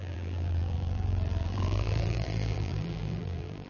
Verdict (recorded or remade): remade